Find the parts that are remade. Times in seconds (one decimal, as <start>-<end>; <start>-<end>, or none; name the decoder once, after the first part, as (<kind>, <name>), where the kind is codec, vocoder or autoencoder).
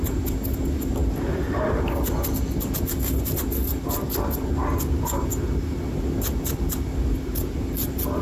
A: none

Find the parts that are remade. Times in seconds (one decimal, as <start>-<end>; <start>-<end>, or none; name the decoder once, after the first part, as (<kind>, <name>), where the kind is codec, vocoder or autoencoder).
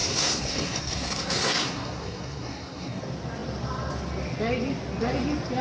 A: 0.0-3.0 (codec, SNAC)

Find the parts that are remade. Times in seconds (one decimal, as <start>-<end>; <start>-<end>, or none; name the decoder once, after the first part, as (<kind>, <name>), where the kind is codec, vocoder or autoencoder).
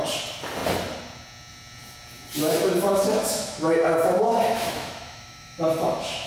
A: 2.4-6.3 (autoencoder, DAC-VAE)